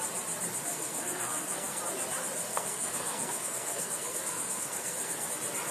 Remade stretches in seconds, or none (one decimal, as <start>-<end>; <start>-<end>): 0.7-1.8; 2.5-5.3